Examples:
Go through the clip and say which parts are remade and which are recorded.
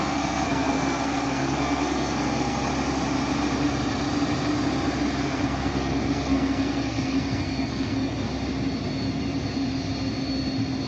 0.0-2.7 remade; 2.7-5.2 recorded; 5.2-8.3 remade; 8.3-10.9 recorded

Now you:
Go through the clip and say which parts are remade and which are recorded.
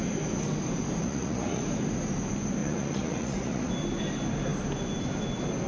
0.0-1.0 recorded; 1.0-1.6 remade; 1.6-2.6 recorded; 2.6-3.7 remade; 3.7-5.7 recorded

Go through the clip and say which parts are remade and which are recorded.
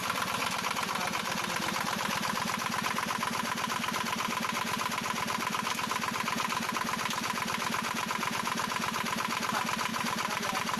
0.0-9.9 recorded; 9.9-10.8 remade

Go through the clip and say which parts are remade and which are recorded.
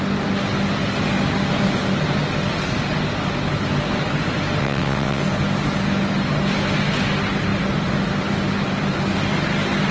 0.0-4.6 recorded; 4.6-5.2 remade; 5.2-9.9 recorded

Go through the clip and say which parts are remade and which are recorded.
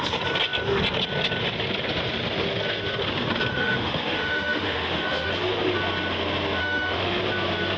0.0-3.5 recorded; 3.5-5.3 remade; 5.3-6.6 recorded; 6.6-7.2 remade; 7.2-7.8 recorded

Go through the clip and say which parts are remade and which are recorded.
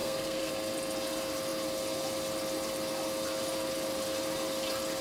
0.0-0.5 remade; 0.5-5.0 recorded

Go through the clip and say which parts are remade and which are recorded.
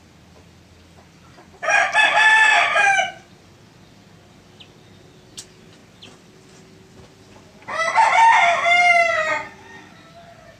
0.0-10.6 recorded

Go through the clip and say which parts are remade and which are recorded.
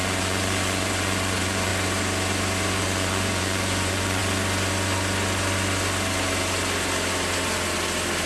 0.0-1.7 remade; 1.7-2.8 recorded; 2.8-4.2 remade; 4.2-8.3 recorded